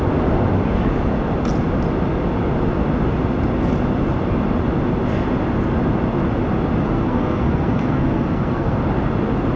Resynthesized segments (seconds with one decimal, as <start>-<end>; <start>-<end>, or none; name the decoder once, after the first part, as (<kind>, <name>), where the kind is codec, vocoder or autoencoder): 6.8-8.8 (codec, SNAC)